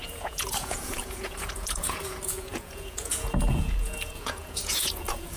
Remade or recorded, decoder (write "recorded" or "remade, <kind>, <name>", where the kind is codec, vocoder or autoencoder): remade, vocoder, Vocos